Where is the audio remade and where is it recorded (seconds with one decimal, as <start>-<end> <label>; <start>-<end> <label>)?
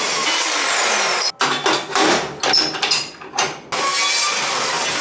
0.0-5.0 recorded